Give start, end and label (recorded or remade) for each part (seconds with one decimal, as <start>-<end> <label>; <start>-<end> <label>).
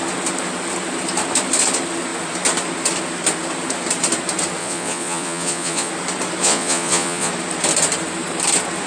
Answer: 0.0-4.6 recorded; 4.6-5.9 remade; 5.9-6.4 recorded; 6.4-7.3 remade; 7.3-8.9 recorded